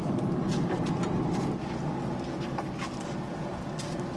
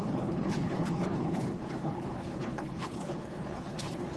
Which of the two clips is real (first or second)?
first